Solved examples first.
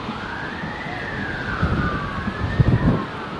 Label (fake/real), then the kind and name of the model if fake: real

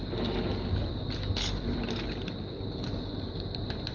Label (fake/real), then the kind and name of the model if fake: real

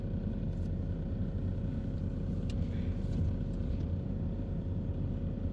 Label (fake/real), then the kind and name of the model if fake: real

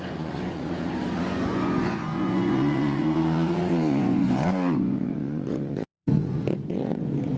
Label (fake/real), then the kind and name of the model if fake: fake, vocoder, Vocos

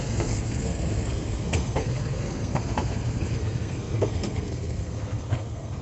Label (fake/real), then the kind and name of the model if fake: fake, codec, SNAC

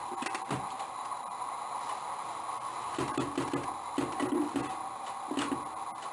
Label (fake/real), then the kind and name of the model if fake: real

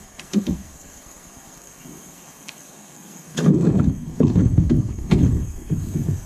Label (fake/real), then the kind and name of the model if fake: fake, codec, SNAC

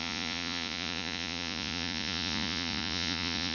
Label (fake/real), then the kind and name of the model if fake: fake, vocoder, Vocos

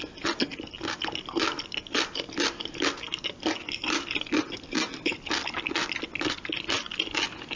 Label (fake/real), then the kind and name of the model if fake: real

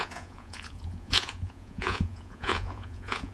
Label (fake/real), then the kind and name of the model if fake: fake, vocoder, Vocos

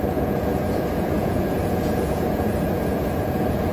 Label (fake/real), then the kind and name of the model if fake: fake, vocoder, Vocos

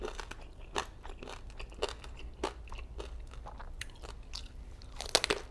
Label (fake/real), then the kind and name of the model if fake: real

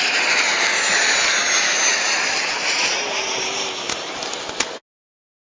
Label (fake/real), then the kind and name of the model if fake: real